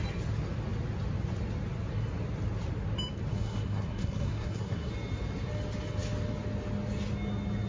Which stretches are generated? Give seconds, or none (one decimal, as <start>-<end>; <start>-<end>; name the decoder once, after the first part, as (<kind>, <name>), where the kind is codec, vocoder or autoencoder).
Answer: 3.3-4.9 (codec, SNAC)